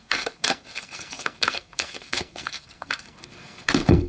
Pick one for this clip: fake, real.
fake